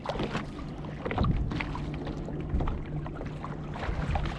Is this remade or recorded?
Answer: recorded